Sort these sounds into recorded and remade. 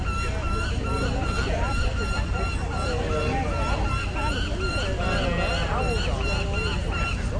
recorded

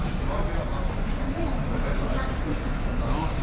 remade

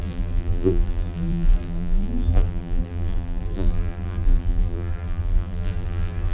remade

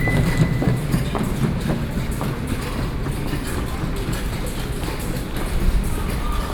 recorded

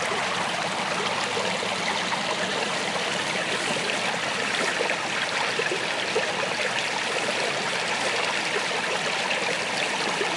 recorded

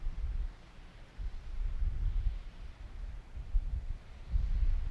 recorded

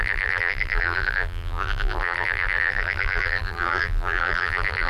remade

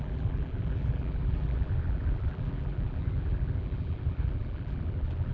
remade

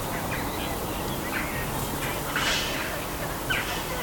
recorded